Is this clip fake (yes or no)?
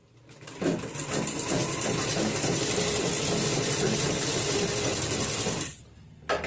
no